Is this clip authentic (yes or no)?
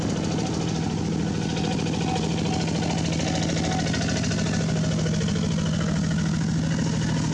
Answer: yes